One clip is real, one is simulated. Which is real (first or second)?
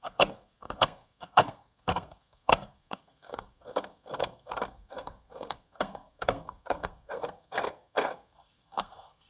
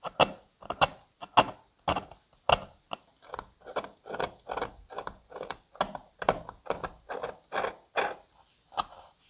second